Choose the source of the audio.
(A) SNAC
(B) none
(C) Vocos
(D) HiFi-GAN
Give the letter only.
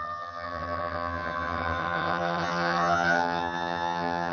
D